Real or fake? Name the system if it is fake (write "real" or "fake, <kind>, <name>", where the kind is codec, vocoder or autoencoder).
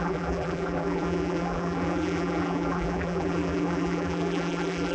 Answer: fake, vocoder, BigVGAN v2